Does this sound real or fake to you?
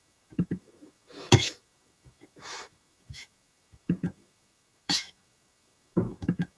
fake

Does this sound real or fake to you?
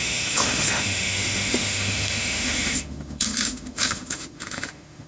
fake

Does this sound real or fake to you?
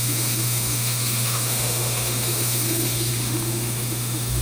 fake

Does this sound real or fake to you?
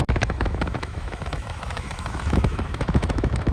fake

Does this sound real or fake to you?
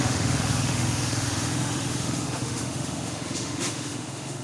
fake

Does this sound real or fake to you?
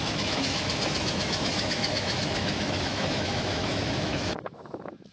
fake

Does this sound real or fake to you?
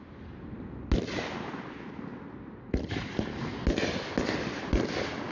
real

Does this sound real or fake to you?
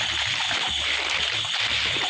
real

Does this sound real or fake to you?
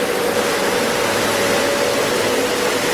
real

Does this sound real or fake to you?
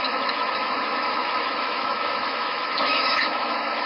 fake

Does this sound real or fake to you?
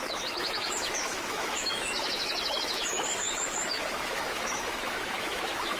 fake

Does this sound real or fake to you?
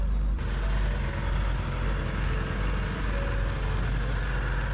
real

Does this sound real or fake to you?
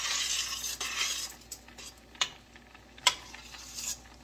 real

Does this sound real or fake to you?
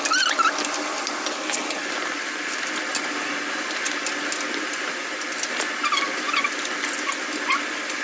real